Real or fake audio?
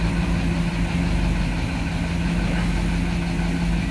real